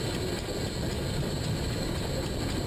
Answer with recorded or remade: recorded